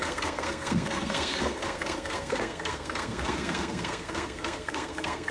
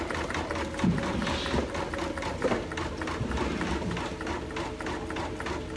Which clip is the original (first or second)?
second